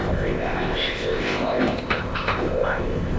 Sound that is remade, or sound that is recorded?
remade